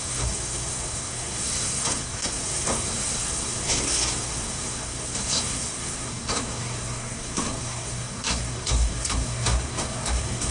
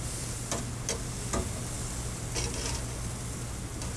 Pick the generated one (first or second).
first